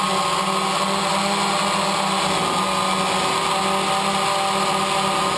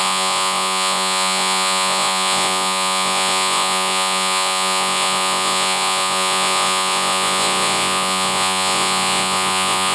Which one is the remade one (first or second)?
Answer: second